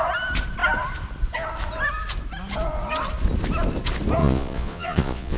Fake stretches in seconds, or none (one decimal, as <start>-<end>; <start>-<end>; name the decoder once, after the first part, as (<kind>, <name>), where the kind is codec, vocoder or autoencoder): 4.2-5.4 (vocoder, Vocos)